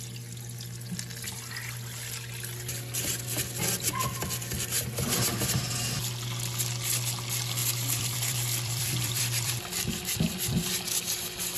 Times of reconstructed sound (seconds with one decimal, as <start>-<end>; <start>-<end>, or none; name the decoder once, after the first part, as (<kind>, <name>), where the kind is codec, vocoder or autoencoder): 7.6-9.6 (vocoder, BigVGAN v2)